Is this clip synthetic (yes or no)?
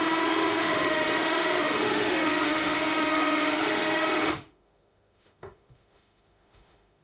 yes